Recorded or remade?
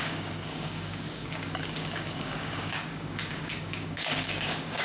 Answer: remade